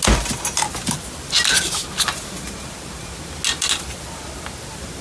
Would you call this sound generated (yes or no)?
no